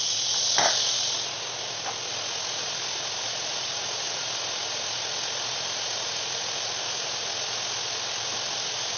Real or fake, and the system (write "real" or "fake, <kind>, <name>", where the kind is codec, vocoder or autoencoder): real